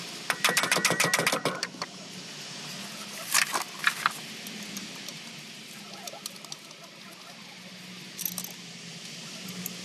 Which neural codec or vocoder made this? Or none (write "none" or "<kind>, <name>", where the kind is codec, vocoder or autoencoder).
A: none